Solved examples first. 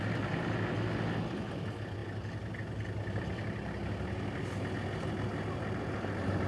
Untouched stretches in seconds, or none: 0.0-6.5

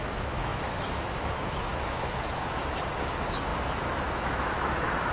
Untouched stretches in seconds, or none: none

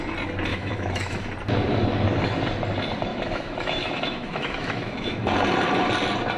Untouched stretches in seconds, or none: 0.0-0.5; 1.2-3.1; 5.3-6.4

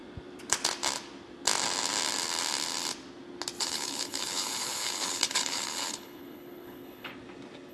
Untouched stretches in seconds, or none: 0.0-3.6; 7.1-7.7

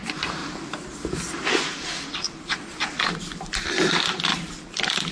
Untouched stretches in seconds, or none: 0.0-0.4; 3.5-4.3